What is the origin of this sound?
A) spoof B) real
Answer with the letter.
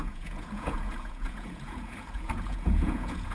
A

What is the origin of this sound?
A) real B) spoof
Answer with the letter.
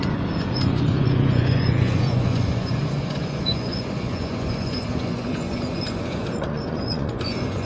B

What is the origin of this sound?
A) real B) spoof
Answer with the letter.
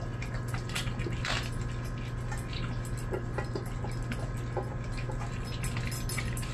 A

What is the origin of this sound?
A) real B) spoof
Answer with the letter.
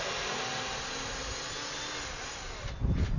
A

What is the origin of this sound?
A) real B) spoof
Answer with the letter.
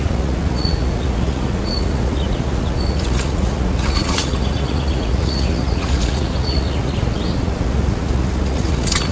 B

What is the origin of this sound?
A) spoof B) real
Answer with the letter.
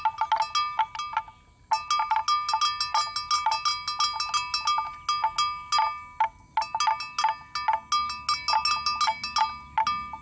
B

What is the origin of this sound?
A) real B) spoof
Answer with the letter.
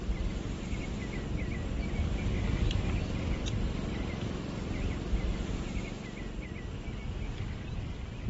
A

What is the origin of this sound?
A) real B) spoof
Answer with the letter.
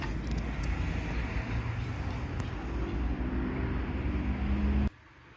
A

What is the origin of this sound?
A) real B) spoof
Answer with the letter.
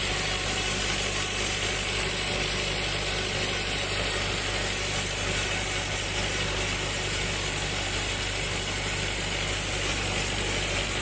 A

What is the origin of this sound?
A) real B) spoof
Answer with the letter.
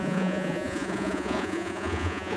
B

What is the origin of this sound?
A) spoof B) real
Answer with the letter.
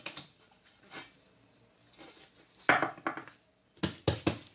B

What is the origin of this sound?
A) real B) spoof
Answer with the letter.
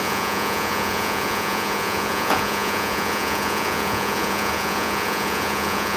B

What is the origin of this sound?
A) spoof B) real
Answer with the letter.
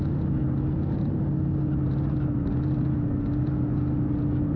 B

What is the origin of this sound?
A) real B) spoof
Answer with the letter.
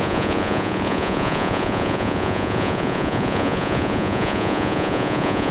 B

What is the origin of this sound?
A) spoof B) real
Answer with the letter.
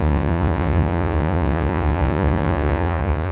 A